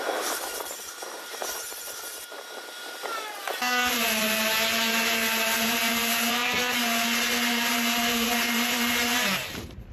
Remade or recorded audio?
remade